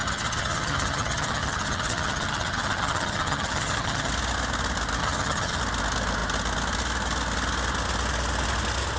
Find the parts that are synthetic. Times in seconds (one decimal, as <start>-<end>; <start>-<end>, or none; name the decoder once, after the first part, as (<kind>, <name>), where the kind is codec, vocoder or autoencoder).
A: 0.0-4.1 (vocoder, HiFi-GAN); 5.0-5.6